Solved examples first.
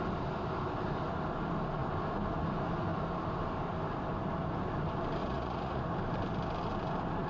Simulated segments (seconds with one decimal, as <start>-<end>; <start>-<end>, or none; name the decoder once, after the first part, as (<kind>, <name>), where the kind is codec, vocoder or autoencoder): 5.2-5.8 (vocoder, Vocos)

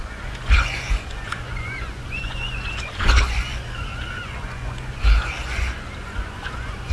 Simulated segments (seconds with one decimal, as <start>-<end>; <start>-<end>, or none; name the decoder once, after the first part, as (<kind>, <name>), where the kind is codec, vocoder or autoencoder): 0.0-6.9 (vocoder, Vocos)

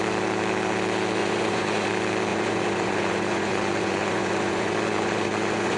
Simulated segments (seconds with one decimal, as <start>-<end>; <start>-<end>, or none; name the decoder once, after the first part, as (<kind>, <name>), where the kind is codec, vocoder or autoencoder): 1.2-1.9 (vocoder, Vocos); 2.3-5.8

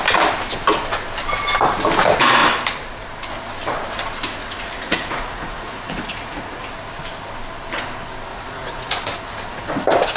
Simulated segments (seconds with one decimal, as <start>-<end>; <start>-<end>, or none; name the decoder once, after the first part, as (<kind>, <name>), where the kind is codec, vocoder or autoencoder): 4.4-6.7 (vocoder, Vocos); 8.3-9.1

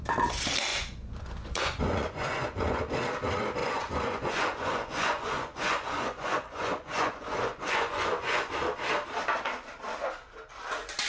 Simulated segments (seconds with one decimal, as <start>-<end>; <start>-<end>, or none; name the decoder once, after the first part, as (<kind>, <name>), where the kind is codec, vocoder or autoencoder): 0.7-2.8 (vocoder, Vocos); 3.6-8.5

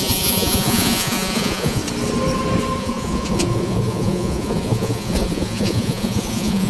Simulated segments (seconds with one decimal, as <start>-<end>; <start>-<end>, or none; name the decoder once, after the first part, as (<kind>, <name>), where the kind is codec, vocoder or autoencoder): 0.0-1.8 (vocoder, Vocos); 2.8-6.7

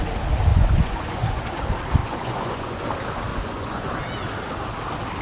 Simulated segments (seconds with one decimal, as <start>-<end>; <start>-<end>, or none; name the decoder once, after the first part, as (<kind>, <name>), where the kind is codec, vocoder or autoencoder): 0.5-1.4 (vocoder, Vocos); 2.0-2.8; 3.3-4.0